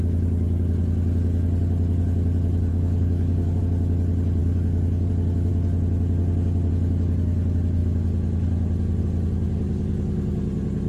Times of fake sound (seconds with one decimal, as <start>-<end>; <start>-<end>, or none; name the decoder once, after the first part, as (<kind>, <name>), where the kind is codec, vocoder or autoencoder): 2.7-3.6 (codec, DAC); 4.4-5.1